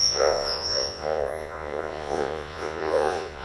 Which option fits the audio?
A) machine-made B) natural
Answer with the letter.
A